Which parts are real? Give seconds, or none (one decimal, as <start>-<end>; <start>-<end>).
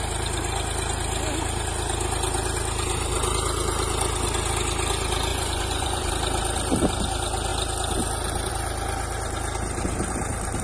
0.0-5.3; 6.1-10.6